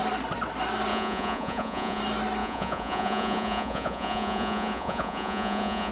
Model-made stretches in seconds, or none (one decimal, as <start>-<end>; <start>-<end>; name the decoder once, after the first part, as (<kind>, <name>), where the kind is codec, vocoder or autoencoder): 0.9-2.0 (vocoder, Vocos); 2.4-5.9